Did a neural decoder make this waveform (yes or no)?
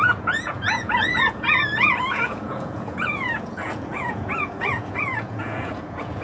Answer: yes